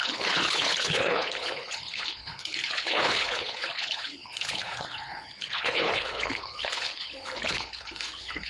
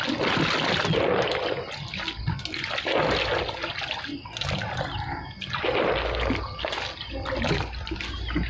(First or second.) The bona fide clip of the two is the second